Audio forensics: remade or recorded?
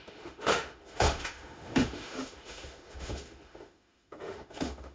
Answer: remade